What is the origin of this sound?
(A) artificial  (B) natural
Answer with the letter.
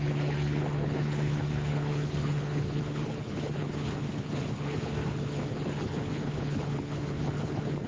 A